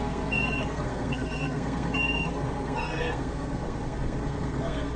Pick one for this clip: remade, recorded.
remade